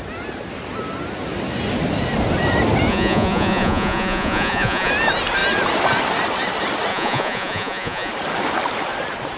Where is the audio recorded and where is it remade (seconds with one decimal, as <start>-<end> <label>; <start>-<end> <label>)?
0.0-2.9 recorded; 2.9-4.9 remade; 4.9-6.9 recorded; 6.9-8.1 remade; 8.1-9.4 recorded